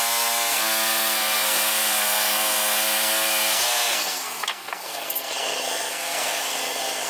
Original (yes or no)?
no